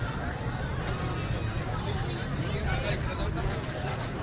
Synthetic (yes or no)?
no